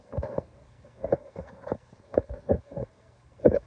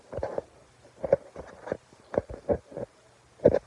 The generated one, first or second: first